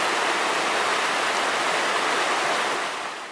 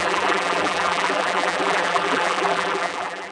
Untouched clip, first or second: first